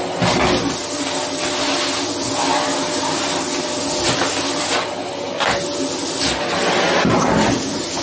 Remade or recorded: recorded